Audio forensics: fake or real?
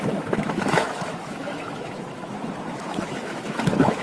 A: fake